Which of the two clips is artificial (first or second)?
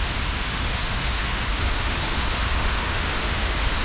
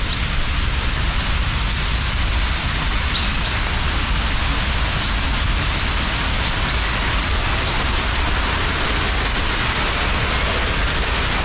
first